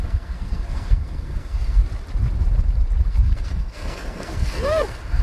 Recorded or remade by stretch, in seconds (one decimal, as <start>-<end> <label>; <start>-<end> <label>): 0.0-1.8 remade; 1.8-3.1 recorded; 3.1-5.2 remade